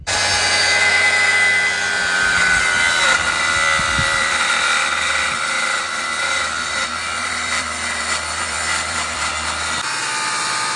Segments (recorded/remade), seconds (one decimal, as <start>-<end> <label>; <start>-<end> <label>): 0.0-9.3 remade; 9.3-10.0 recorded; 10.0-10.8 remade